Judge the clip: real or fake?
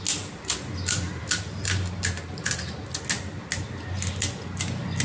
real